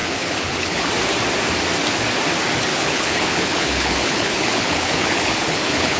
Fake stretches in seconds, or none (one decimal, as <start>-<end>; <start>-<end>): 0.0-0.9; 2.7-6.0